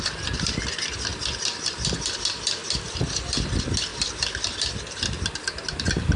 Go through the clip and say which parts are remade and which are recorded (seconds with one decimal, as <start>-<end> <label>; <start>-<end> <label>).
0.0-6.2 recorded